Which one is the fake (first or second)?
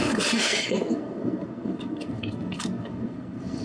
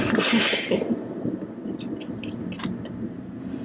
first